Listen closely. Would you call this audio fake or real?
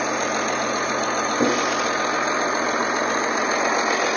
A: real